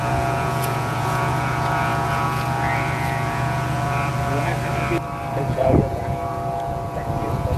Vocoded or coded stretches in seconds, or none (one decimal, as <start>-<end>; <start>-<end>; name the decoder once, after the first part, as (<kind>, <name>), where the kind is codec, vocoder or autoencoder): 0.0-4.5 (vocoder, Vocos); 5.3-7.6